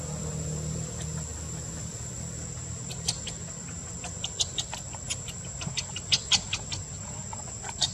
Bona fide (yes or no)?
yes